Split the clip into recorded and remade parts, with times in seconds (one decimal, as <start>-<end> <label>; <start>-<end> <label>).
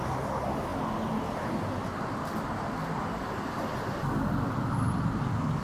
0.0-5.6 recorded